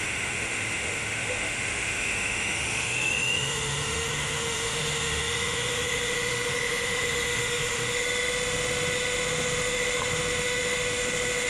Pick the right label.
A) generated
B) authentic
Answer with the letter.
A